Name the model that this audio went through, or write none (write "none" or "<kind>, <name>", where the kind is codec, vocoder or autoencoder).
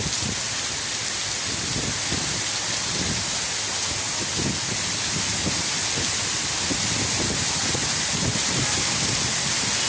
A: none